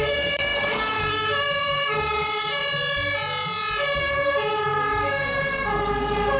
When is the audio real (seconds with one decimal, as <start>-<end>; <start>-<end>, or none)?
2.6-4.0